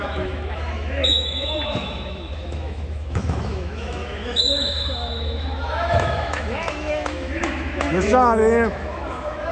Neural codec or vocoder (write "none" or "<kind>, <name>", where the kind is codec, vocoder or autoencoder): autoencoder, DAC-VAE